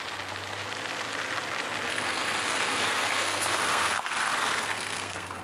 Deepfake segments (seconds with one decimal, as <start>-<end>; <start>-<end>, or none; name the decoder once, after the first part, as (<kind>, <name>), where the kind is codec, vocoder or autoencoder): 1.9-5.4 (codec, SNAC)